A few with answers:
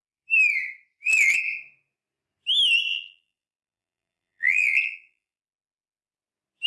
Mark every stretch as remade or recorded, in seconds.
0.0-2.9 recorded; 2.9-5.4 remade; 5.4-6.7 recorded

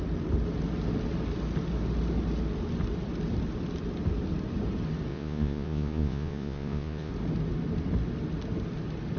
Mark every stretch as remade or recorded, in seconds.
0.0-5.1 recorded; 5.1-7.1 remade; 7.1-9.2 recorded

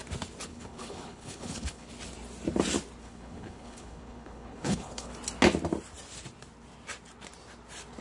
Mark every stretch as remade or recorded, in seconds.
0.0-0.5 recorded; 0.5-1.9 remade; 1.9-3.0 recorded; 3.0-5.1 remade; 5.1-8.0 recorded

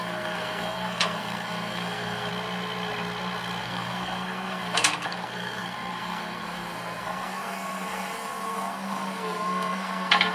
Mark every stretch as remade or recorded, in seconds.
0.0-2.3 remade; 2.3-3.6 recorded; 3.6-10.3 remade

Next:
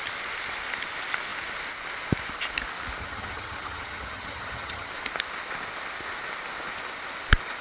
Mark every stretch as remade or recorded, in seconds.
0.0-3.0 recorded; 3.0-4.9 remade; 4.9-7.6 recorded

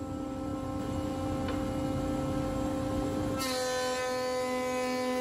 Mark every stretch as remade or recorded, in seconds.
0.0-5.2 recorded

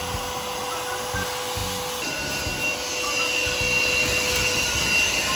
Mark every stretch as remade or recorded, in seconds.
0.0-5.4 recorded

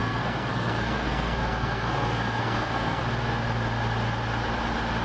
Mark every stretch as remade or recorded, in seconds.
0.0-3.0 remade; 3.0-5.0 recorded